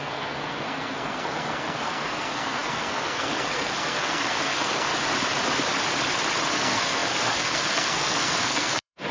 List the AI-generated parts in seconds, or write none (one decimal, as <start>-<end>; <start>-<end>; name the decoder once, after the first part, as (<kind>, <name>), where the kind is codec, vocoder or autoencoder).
0.0-4.9 (codec, SNAC); 6.5-9.1